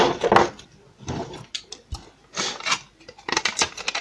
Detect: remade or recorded recorded